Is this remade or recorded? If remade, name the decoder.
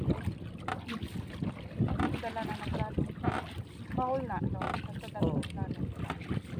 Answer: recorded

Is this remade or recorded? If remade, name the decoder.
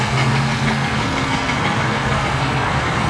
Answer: remade, codec, SNAC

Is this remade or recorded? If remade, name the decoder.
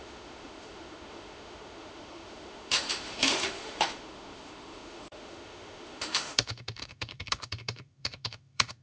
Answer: remade, autoencoder, DAC-VAE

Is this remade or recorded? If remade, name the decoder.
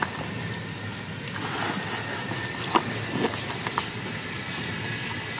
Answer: recorded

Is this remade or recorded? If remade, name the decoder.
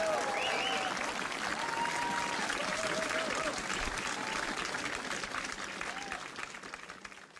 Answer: recorded